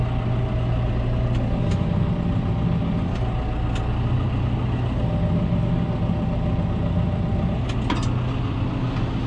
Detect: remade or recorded recorded